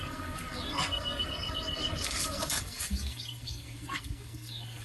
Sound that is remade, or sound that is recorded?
remade